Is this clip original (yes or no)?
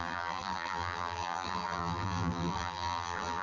no